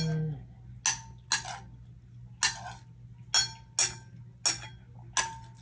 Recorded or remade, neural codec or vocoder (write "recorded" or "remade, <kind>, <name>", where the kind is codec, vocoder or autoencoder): recorded